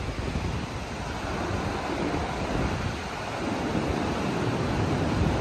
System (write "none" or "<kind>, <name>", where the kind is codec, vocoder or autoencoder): none